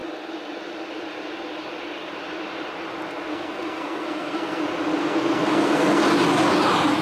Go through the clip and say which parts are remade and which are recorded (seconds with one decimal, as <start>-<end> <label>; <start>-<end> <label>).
0.0-3.3 recorded; 3.3-4.6 remade; 4.6-5.0 recorded; 5.0-6.0 remade; 6.0-7.0 recorded